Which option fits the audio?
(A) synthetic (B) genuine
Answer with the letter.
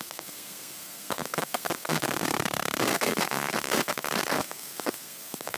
A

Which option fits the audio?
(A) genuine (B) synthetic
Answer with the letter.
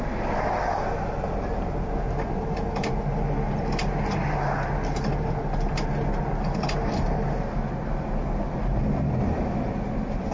A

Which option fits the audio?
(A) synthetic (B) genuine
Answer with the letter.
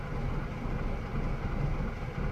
B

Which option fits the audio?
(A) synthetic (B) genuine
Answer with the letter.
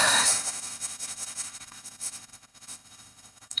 A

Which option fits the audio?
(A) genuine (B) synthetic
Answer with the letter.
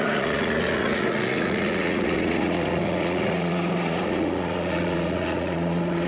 B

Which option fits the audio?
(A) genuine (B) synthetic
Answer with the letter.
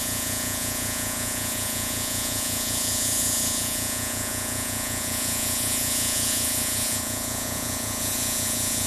B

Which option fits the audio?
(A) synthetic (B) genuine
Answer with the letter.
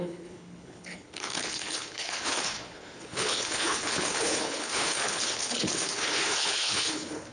A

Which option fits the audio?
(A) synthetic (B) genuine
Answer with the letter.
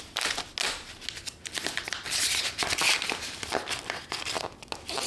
B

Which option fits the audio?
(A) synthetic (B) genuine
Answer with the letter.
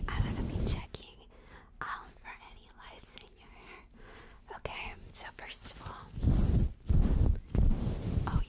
B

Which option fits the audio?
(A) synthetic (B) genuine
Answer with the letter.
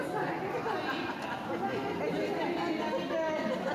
B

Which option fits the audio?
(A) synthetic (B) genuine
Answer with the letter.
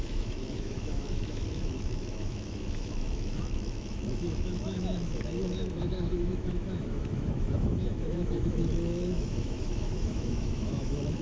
A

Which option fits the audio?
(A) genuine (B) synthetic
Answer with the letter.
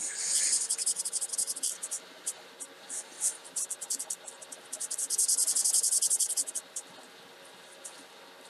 A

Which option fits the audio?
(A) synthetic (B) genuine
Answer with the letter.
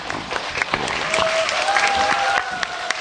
B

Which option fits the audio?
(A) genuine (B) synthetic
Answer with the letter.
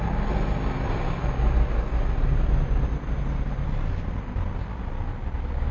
A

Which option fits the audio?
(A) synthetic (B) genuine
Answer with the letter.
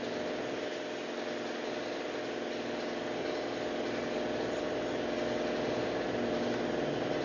B